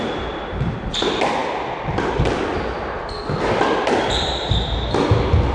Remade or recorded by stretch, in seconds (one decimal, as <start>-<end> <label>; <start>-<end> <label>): 0.0-5.5 recorded